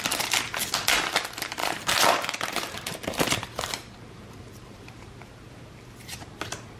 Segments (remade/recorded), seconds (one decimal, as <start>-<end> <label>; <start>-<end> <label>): 0.0-1.6 recorded; 1.6-5.7 remade; 5.7-6.8 recorded